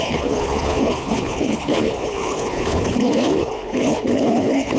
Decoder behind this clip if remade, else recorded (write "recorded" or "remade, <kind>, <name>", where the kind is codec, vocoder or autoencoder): remade, codec, HILCodec